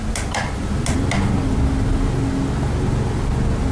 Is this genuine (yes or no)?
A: yes